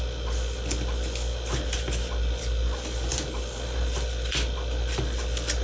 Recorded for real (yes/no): yes